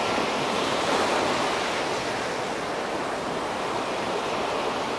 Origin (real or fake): real